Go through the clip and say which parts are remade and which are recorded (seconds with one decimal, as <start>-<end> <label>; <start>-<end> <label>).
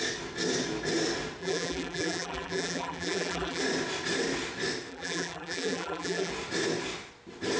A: 0.0-1.4 recorded; 1.4-3.6 remade; 3.6-4.9 recorded; 4.9-6.3 remade; 6.3-7.6 recorded